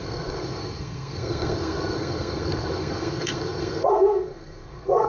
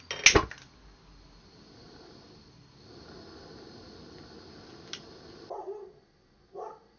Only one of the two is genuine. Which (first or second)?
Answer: second